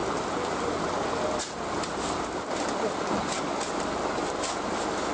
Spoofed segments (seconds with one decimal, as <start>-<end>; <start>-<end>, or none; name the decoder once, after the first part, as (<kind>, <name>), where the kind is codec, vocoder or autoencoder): none